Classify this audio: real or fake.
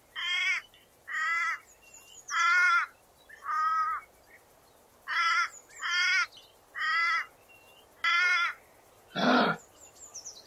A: real